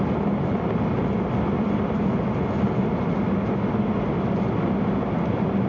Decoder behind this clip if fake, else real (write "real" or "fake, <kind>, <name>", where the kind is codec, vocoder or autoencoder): real